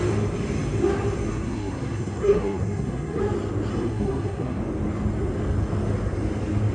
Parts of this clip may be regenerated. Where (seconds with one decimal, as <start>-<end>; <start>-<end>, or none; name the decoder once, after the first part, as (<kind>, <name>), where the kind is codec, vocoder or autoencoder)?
1.3-3.2 (codec, SNAC); 3.7-4.6